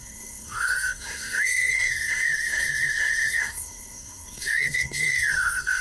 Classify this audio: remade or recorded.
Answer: remade